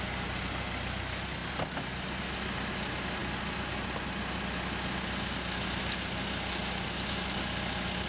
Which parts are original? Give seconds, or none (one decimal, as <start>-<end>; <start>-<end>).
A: 0.0-8.1